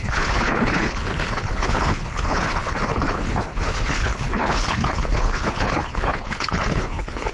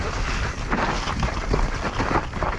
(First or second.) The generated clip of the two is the first